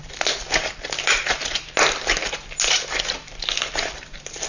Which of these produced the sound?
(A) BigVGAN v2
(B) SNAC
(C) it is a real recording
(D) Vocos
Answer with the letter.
C